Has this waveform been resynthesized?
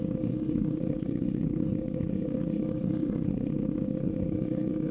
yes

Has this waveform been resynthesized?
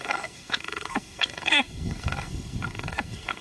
yes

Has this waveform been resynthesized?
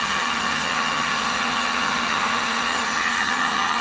yes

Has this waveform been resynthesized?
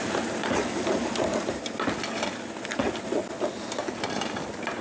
no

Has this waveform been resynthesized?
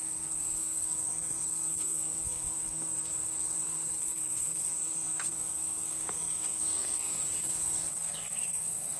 yes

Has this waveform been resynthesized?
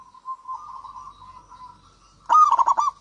no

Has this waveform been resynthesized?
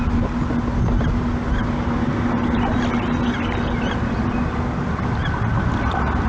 no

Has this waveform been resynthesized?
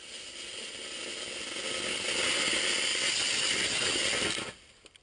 no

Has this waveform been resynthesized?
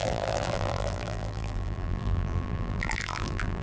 yes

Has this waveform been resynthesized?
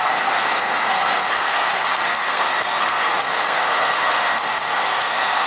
yes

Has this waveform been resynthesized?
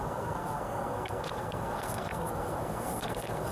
yes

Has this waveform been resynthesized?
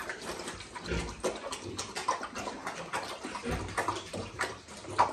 no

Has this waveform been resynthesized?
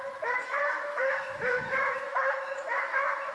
yes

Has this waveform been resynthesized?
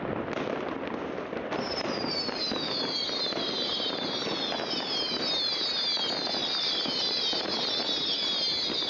no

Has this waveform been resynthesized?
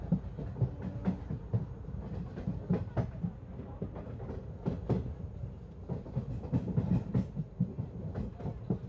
no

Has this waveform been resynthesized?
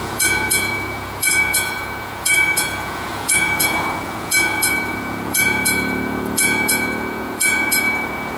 yes